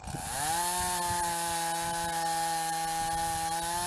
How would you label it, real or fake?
real